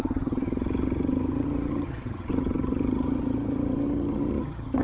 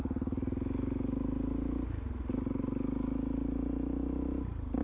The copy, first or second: first